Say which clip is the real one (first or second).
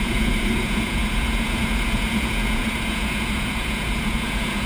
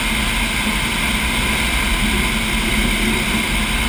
second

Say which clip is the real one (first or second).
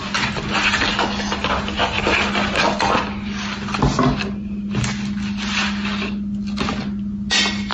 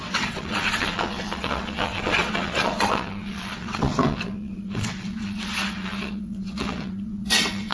first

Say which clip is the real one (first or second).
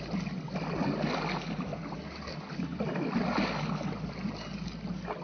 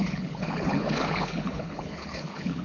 first